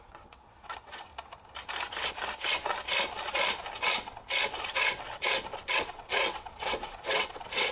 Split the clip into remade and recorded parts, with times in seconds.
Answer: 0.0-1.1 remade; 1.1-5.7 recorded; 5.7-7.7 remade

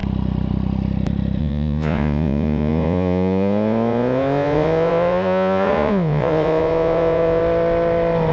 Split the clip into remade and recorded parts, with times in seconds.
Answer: 0.0-1.4 recorded; 1.4-7.4 remade; 7.4-8.3 recorded

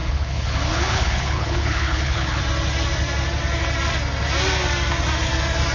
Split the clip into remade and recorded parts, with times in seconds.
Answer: 0.0-2.4 remade; 2.4-5.7 recorded

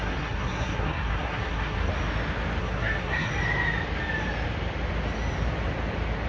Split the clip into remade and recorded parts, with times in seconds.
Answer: 0.0-1.9 remade; 1.9-2.6 recorded; 2.6-3.3 remade; 3.3-6.3 recorded

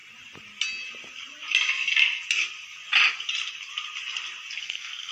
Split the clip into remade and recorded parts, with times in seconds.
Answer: 0.0-4.6 recorded; 4.6-5.1 remade

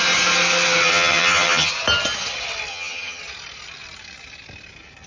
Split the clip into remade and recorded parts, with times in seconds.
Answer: 0.0-0.9 recorded; 0.9-1.7 remade; 1.7-2.7 recorded; 2.7-3.2 remade; 3.2-5.1 recorded